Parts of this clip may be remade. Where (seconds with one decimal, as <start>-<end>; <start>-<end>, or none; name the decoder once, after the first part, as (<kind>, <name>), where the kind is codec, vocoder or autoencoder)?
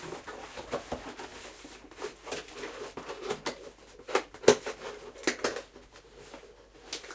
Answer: none